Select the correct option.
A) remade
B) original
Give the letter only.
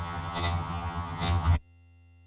A